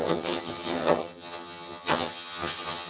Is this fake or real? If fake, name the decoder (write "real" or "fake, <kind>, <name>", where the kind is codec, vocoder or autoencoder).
fake, vocoder, HiFi-GAN